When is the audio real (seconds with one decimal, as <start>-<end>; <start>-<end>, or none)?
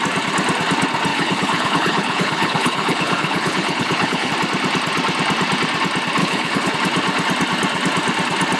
0.0-1.1; 4.3-6.2; 6.7-8.6